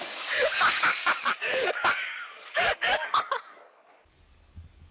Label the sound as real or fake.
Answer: fake